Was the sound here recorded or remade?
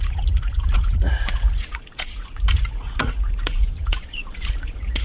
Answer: remade